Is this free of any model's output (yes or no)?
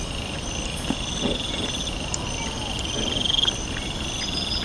yes